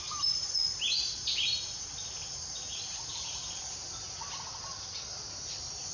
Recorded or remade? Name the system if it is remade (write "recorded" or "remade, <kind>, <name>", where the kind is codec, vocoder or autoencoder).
recorded